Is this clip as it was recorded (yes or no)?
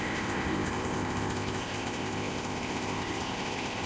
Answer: no